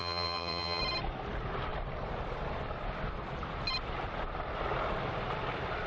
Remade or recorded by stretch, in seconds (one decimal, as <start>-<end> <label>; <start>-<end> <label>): 0.0-0.8 remade; 0.8-5.9 recorded